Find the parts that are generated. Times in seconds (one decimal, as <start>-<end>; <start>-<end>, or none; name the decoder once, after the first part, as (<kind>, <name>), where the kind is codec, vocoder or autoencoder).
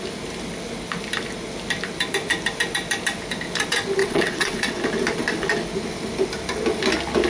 4.0-4.8 (vocoder, WaveNeXt)